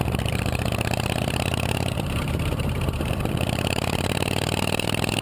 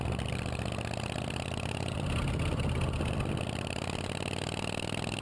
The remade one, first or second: first